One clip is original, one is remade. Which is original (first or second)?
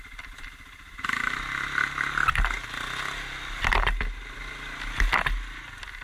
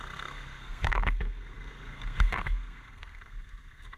first